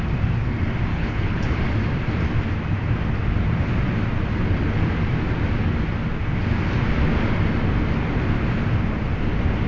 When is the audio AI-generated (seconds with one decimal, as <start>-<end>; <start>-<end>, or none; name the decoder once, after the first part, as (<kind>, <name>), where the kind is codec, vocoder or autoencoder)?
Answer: 0.9-1.6 (codec, HILCodec)